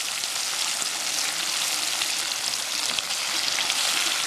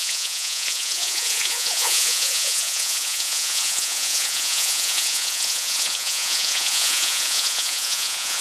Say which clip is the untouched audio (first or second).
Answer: first